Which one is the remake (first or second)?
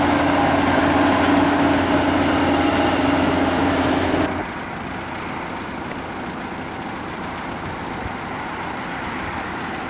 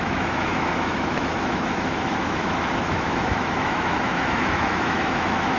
second